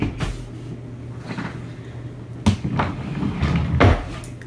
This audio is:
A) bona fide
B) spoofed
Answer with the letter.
A